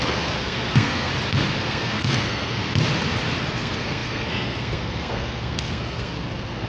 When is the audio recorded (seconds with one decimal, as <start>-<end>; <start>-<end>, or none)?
1.1-1.6; 2.6-3.4